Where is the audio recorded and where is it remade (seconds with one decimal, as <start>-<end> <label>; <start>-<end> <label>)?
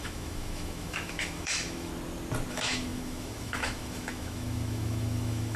0.0-1.9 remade; 1.9-2.5 recorded; 2.5-5.6 remade